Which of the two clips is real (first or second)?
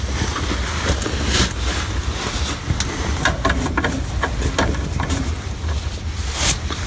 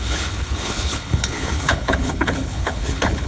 first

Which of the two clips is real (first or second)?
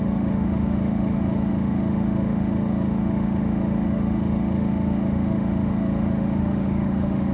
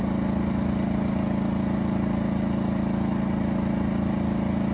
second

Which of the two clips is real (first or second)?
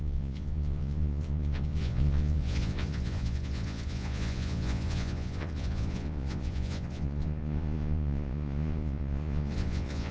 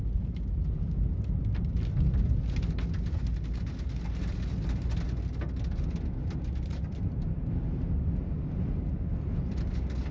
second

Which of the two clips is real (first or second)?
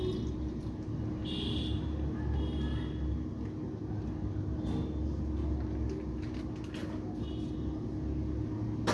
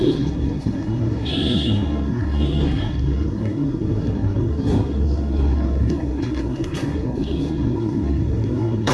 first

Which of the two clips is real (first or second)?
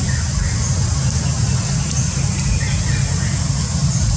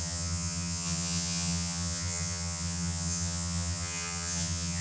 first